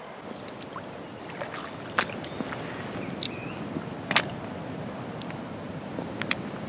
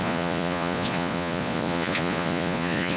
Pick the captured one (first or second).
first